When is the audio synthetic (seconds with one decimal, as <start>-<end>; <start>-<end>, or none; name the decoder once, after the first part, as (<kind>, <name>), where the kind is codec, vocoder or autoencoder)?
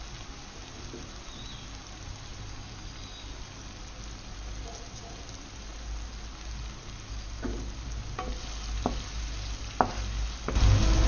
none